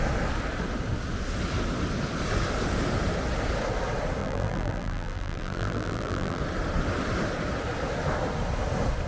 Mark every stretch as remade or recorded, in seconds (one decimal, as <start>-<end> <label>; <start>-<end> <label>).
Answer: 0.0-4.2 recorded; 4.2-6.4 remade; 6.4-9.1 recorded